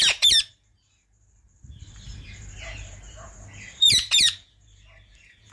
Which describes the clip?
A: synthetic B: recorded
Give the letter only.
A